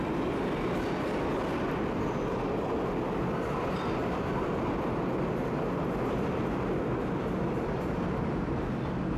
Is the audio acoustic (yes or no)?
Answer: yes